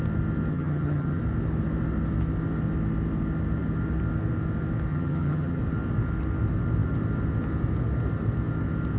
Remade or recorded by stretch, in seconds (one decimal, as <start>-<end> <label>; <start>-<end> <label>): 0.0-0.5 recorded; 0.5-1.2 remade; 1.2-4.9 recorded; 4.9-5.6 remade; 5.6-9.0 recorded